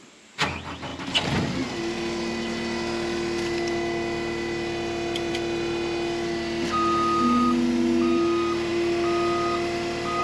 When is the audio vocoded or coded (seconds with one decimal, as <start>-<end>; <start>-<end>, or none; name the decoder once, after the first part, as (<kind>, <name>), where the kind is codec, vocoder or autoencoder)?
none